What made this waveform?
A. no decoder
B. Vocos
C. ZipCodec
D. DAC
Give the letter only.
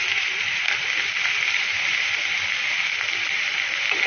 A